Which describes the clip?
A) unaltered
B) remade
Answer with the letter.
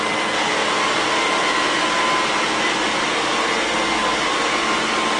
A